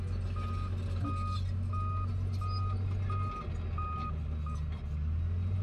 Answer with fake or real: real